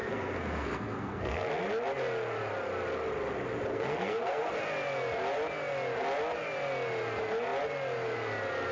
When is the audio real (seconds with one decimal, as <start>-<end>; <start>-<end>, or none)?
1.5-3.7; 4.5-8.7

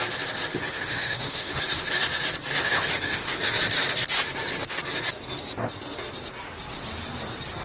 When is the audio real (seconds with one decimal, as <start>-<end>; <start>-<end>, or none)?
0.0-0.7; 1.6-2.6; 3.4-7.6

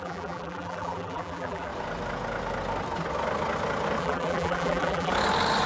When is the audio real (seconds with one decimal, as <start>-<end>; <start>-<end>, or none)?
1.7-4.0; 5.1-5.7

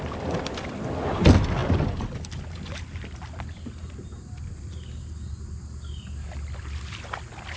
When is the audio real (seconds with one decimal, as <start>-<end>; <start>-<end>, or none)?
0.0-7.6

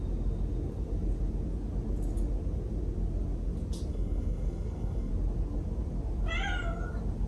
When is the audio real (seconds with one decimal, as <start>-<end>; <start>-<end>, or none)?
0.0-3.9; 5.1-7.3